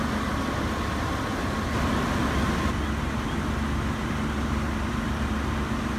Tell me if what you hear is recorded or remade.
recorded